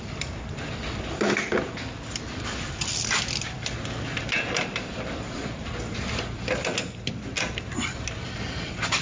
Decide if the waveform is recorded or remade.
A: remade